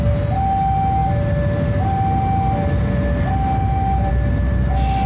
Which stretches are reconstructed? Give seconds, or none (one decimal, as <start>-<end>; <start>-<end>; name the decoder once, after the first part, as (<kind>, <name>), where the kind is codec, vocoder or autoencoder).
none